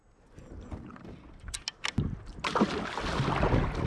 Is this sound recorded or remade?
recorded